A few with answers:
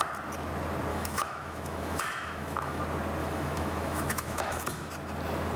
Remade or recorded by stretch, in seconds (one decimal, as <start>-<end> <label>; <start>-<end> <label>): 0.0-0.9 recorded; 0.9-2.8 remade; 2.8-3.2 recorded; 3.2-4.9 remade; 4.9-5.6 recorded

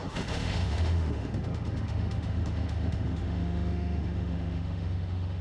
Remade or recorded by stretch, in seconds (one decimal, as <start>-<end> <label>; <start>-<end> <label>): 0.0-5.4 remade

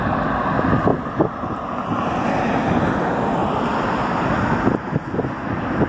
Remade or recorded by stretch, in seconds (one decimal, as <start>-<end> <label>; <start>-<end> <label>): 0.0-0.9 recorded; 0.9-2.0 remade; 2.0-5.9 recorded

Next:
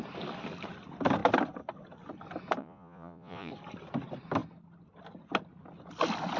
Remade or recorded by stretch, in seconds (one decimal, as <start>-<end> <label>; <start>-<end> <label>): 0.0-2.6 recorded; 2.6-3.5 remade; 3.5-6.4 recorded

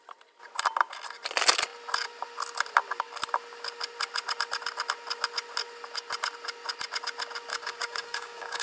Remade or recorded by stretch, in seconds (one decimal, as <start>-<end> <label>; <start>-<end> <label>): 0.0-7.5 recorded; 7.5-8.6 remade

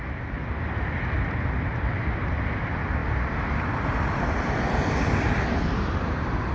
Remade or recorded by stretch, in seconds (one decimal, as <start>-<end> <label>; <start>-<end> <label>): 0.0-3.0 recorded; 3.0-6.5 remade

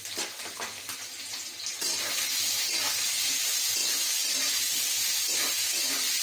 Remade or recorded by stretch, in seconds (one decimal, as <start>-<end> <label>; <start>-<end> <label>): 0.0-6.2 recorded